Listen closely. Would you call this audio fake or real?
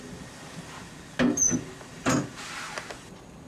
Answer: real